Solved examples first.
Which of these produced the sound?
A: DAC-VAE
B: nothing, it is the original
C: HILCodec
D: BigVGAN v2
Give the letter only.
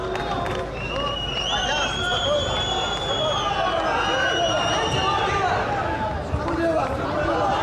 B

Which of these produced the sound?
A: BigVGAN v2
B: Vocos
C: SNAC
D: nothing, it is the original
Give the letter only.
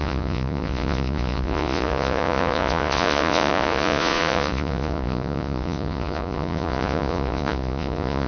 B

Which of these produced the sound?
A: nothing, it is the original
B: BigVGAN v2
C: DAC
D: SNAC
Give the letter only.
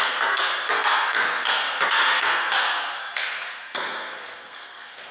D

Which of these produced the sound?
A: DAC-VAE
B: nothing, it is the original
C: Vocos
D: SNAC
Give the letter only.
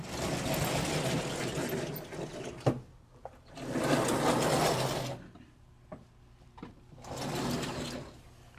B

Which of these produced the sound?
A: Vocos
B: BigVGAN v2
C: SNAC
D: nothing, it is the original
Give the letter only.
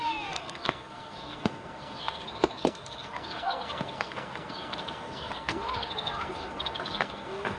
C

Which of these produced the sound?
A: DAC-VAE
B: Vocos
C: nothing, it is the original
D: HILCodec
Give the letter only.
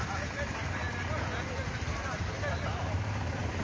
C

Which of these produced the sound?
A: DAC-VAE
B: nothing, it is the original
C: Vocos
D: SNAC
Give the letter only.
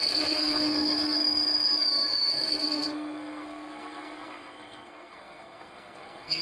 D